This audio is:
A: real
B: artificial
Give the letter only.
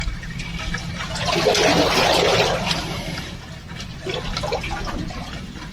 A